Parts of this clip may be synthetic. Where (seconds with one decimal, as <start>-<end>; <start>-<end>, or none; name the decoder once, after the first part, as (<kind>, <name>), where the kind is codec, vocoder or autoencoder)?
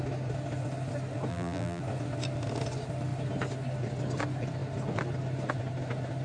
1.3-1.8 (vocoder, BigVGAN v2)